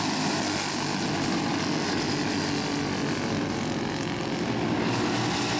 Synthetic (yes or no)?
no